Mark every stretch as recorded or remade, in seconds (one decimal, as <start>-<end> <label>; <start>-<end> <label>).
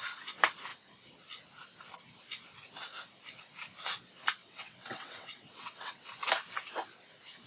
0.0-4.4 recorded; 4.4-6.0 remade; 6.0-7.5 recorded